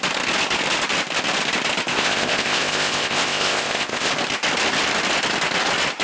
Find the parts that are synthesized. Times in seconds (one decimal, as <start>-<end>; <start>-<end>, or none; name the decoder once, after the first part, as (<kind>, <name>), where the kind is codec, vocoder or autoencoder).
1.9-4.1 (codec, ZipCodec)